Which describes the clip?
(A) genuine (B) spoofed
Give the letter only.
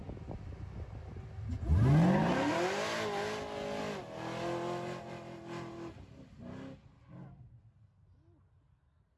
A